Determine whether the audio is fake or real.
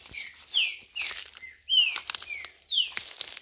real